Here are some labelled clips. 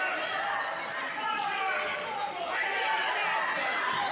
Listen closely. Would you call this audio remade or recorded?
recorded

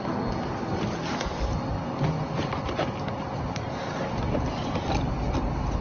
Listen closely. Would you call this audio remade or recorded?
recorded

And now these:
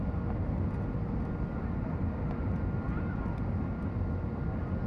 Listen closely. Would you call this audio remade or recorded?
recorded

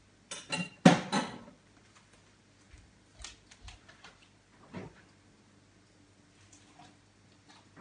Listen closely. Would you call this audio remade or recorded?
recorded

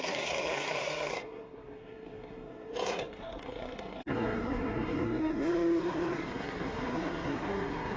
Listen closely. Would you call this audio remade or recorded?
remade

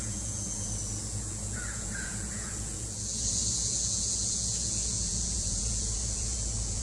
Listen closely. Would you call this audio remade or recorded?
remade